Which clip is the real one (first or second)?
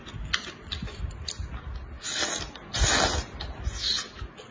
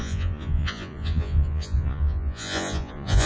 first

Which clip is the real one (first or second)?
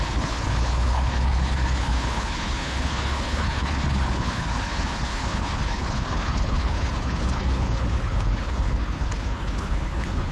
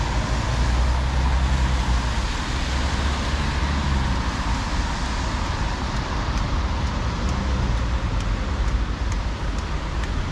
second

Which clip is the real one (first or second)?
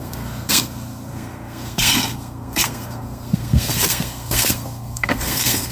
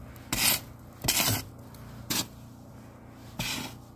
second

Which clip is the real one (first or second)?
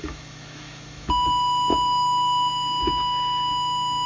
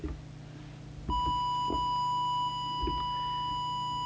second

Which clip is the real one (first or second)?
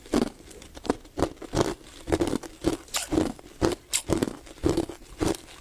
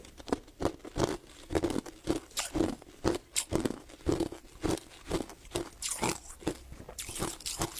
second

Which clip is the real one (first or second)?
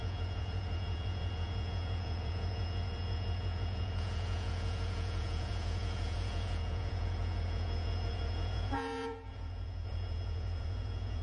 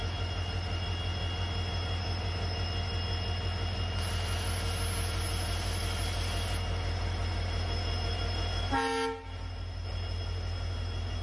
second